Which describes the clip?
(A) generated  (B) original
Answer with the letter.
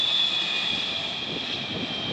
B